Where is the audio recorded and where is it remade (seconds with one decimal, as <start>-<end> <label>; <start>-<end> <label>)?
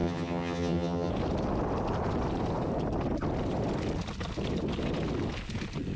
0.0-1.1 remade; 1.1-6.0 recorded